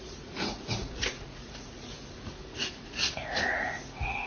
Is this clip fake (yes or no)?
yes